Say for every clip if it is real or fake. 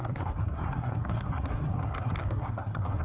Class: fake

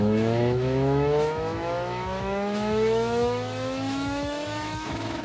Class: fake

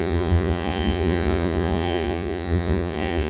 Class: fake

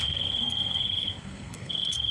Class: fake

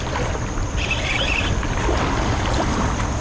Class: real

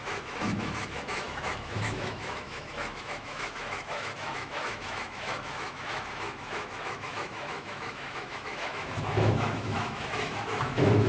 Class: fake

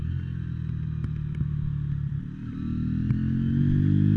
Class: real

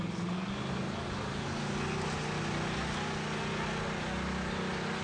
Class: real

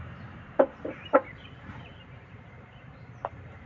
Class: fake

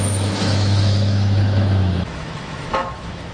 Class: fake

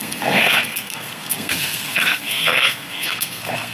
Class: fake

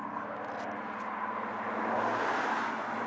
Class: real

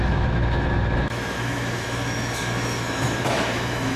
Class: fake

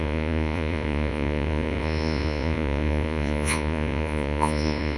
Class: fake